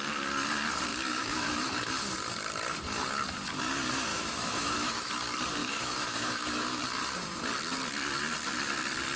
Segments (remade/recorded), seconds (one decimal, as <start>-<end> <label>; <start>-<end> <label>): 0.0-0.9 recorded; 0.9-1.9 remade; 1.9-4.1 recorded; 4.1-5.1 remade; 5.1-5.6 recorded; 5.6-6.8 remade; 6.8-9.2 recorded